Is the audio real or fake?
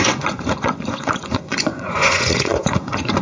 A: fake